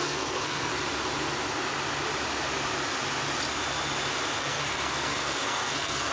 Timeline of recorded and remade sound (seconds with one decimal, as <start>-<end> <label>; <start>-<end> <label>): 0.0-0.7 remade; 0.7-4.4 recorded; 4.4-6.1 remade